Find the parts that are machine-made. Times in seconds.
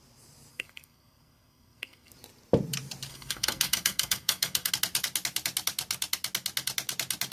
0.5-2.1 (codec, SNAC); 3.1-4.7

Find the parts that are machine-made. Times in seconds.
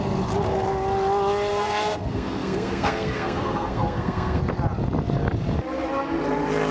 1.5-4.4 (codec, SNAC)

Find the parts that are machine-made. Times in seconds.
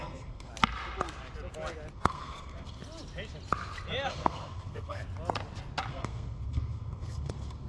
0.0-0.5 (codec, SNAC); 1.9-2.8; 4.1-5.0; 5.9-7.7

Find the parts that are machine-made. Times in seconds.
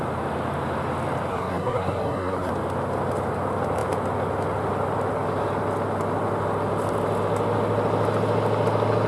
1.3-2.5 (codec, SNAC)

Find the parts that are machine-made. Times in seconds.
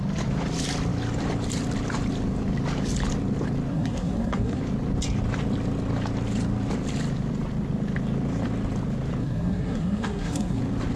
3.7-4.6 (codec, SNAC); 9.2-10.6